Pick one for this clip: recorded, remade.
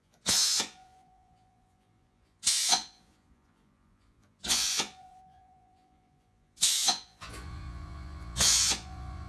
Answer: remade